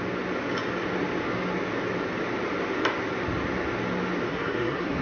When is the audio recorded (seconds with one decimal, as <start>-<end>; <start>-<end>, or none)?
0.0-4.3